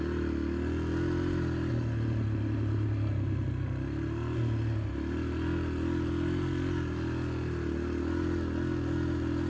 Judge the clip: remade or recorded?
recorded